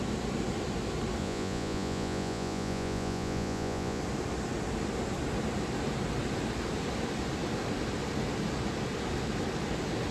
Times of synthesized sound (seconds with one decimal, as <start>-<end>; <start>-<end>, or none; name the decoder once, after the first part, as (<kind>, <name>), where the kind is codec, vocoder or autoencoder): 1.2-4.0 (vocoder, Vocos)